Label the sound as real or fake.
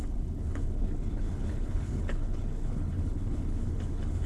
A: fake